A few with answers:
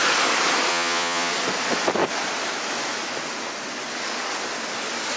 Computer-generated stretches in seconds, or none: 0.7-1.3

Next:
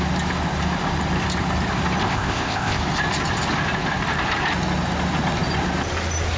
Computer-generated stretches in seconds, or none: 2.0-2.8

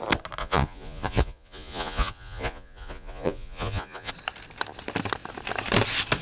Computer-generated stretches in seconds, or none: 0.4-4.1